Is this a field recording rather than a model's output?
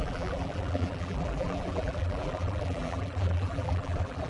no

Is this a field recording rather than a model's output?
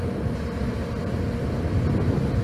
yes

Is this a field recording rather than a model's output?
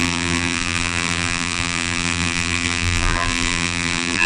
no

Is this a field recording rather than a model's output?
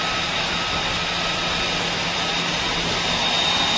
yes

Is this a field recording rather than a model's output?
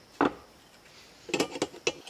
yes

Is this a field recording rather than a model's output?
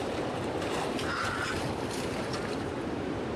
yes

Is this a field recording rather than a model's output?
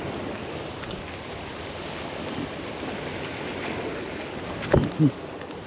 yes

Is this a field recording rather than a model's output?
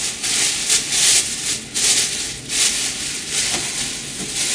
yes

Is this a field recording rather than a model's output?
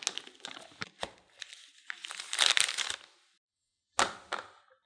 yes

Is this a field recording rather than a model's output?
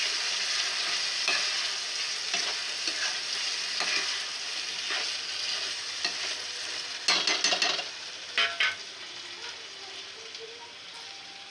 yes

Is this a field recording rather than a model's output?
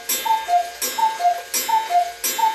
yes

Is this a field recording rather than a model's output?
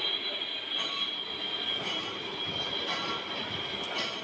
yes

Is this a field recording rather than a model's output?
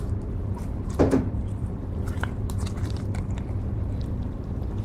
no